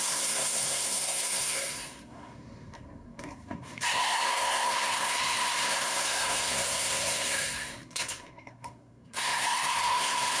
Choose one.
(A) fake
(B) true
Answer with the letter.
A